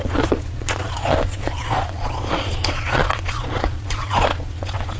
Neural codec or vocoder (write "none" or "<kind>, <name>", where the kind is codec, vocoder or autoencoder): vocoder, Vocos